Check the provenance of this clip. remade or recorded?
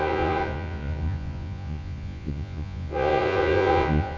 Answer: remade